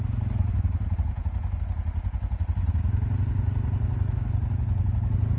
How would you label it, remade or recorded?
recorded